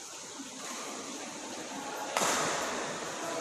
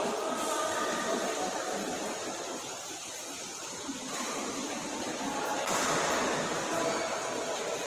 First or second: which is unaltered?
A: second